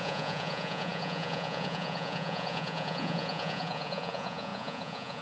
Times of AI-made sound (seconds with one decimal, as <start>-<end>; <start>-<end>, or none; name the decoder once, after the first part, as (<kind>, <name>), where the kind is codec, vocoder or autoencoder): 0.0-5.2 (vocoder, Vocos)